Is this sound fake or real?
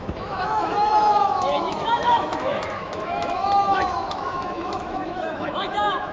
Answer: fake